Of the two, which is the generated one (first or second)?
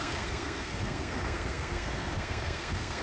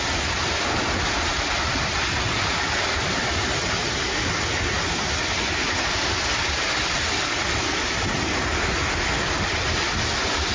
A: first